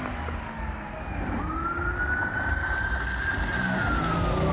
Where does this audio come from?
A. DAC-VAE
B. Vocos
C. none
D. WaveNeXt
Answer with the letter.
C